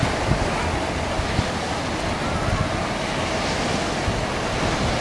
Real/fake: real